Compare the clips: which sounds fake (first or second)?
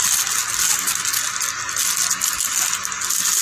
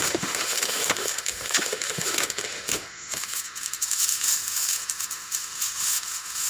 second